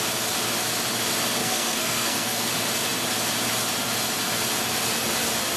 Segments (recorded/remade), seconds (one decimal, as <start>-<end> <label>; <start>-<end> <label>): 0.0-1.4 recorded; 1.4-2.5 remade; 2.5-5.6 recorded